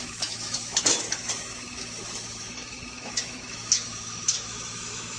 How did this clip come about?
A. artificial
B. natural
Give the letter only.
A